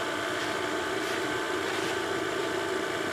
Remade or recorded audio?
remade